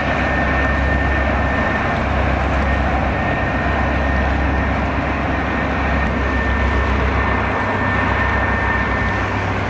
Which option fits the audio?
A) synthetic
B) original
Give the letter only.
B